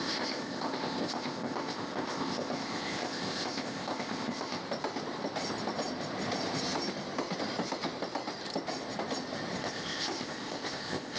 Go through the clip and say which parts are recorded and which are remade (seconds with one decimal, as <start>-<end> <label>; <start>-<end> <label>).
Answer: 0.0-4.6 remade; 4.6-9.6 recorded; 9.6-11.2 remade